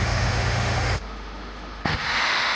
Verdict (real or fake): fake